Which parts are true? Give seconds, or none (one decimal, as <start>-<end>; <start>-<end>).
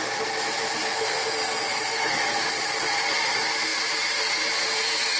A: 0.0-0.8; 2.2-5.2